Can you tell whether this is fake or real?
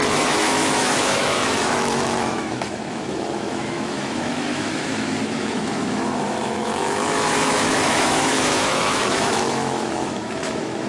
fake